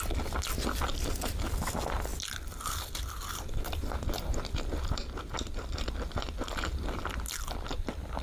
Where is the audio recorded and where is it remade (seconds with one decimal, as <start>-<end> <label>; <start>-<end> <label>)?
0.0-8.2 recorded